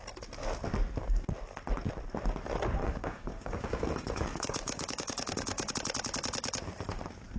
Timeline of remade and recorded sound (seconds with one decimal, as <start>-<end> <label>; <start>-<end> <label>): 0.0-2.8 recorded; 2.8-5.7 remade; 5.7-7.4 recorded